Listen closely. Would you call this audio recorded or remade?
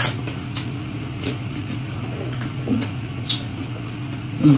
remade